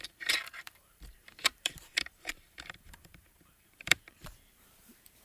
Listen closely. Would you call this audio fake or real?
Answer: fake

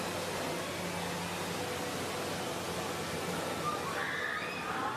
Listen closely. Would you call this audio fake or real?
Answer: real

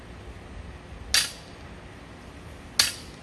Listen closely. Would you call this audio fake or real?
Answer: real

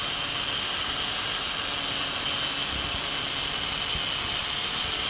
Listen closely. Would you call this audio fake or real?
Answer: real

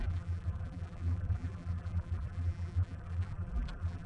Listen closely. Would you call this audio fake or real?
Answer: fake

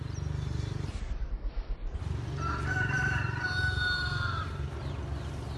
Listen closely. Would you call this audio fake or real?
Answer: real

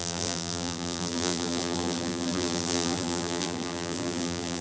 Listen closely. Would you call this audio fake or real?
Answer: fake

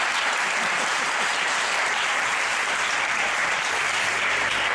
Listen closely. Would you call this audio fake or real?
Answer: fake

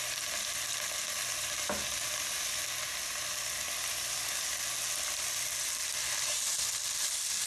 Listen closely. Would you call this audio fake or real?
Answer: real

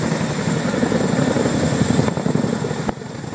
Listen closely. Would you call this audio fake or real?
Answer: real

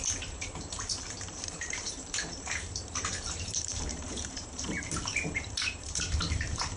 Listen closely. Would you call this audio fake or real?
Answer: fake